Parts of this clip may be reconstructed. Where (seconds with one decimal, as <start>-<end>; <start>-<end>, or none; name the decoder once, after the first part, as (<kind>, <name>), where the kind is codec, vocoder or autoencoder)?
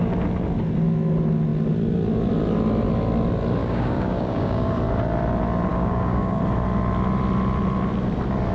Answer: 3.6-4.8 (codec, DAC); 5.7-6.4